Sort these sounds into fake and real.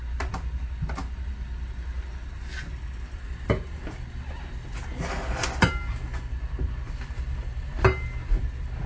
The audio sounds real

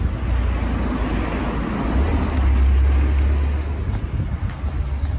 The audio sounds real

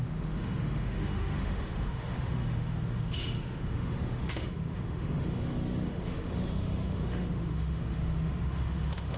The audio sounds fake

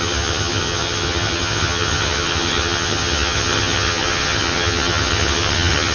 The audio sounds fake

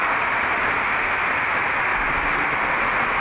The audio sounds real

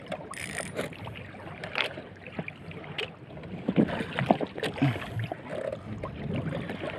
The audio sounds real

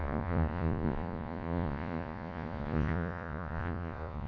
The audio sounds fake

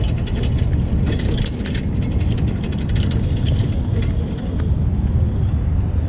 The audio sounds real